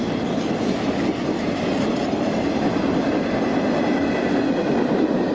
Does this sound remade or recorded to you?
recorded